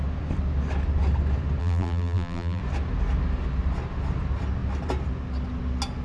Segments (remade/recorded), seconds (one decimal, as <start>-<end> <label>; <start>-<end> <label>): 0.0-1.6 recorded; 1.6-2.6 remade; 2.6-6.0 recorded